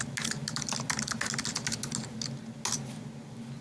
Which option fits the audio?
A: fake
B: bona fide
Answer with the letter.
B